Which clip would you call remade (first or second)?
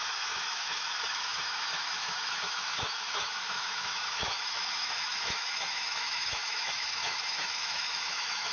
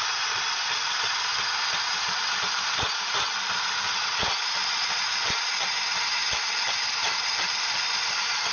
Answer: first